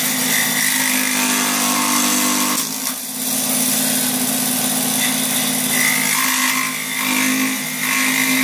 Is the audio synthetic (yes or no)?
no